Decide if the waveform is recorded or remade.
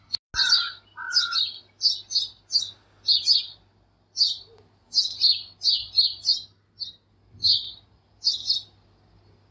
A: recorded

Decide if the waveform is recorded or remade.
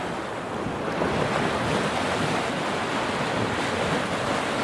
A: recorded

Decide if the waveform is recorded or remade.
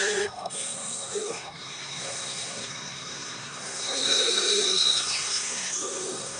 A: remade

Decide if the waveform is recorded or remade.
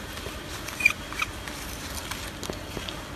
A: recorded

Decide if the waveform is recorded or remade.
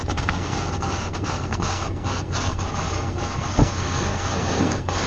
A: remade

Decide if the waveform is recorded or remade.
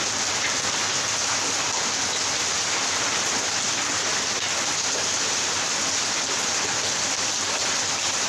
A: recorded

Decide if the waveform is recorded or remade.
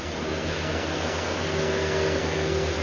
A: remade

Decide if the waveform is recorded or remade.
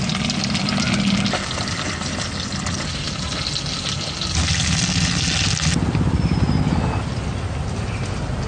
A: recorded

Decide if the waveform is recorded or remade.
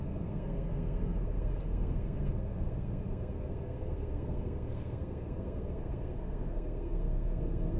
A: remade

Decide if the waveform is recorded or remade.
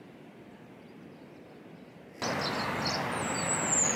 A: recorded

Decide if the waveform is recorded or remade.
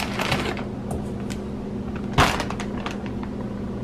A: recorded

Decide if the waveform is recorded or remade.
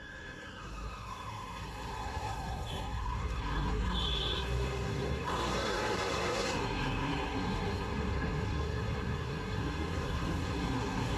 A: remade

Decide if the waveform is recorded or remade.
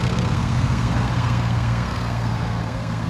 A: remade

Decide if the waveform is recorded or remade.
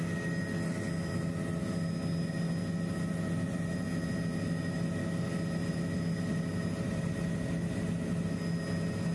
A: recorded